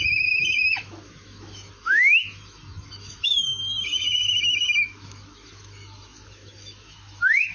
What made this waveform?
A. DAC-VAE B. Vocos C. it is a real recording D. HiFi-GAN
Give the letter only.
A